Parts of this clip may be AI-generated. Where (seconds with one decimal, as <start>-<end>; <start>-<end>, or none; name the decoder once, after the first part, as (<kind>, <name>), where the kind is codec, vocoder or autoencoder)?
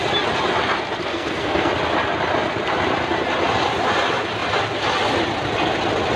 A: 1.1-1.7 (codec, SNAC)